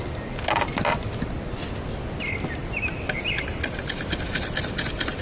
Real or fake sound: real